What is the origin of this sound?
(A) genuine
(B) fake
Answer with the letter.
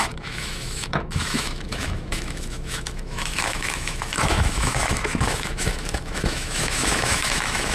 B